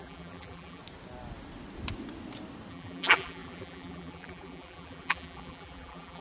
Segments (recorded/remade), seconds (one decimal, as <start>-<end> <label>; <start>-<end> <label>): 0.0-0.8 remade; 0.8-2.7 recorded; 2.7-6.2 remade